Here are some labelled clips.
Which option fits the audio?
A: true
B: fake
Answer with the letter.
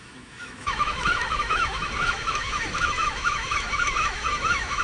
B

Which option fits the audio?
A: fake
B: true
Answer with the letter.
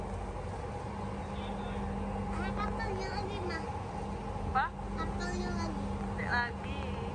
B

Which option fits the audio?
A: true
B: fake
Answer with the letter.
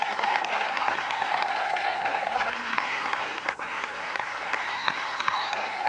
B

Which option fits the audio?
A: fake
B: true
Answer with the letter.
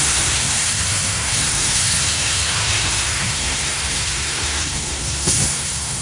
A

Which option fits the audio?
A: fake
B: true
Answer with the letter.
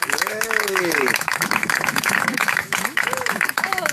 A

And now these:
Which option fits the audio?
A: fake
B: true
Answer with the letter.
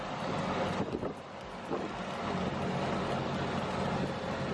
B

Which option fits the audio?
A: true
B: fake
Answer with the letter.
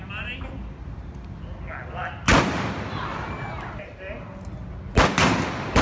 A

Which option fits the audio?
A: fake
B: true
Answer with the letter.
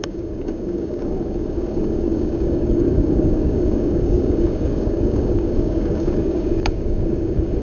A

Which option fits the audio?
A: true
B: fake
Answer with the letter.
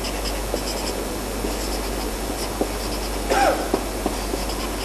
A